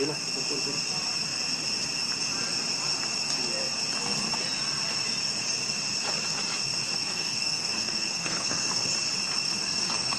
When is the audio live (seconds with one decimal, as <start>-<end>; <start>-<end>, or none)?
0.0-7.0; 8.9-9.6